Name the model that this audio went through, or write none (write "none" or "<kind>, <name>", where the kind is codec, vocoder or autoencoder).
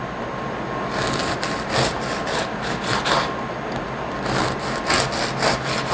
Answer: none